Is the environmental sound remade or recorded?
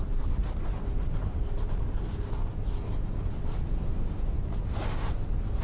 recorded